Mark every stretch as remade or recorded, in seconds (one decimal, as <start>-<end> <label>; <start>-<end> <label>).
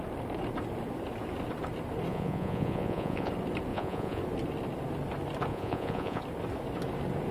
0.0-2.1 recorded; 2.1-3.3 remade; 3.3-3.7 recorded; 3.7-4.2 remade; 4.2-5.5 recorded; 5.5-6.2 remade; 6.2-7.3 recorded